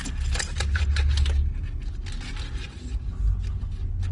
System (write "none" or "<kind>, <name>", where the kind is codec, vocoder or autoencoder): none